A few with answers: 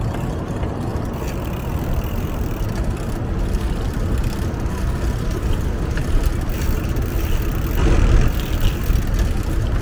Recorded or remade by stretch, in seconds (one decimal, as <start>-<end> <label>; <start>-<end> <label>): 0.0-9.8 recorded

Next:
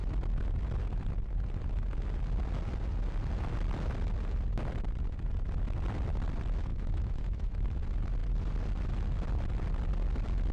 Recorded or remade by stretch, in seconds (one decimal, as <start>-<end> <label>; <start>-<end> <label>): 0.0-6.7 recorded; 6.7-7.8 remade; 7.8-10.5 recorded

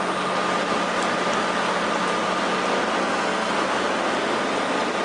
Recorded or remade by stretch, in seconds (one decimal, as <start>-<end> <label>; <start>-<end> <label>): 0.0-3.0 recorded; 3.0-3.5 remade; 3.5-5.0 recorded

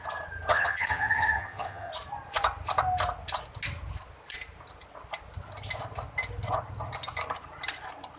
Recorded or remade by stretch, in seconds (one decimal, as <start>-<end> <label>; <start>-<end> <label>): 0.0-0.5 recorded; 0.5-1.9 remade; 1.9-8.2 recorded